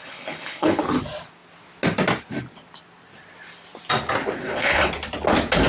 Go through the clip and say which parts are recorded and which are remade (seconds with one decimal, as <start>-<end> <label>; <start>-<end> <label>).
0.0-0.8 remade; 0.8-4.4 recorded; 4.4-4.9 remade; 4.9-5.7 recorded